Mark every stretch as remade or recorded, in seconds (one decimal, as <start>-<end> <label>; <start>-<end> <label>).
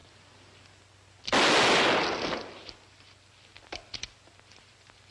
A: 0.0-5.1 recorded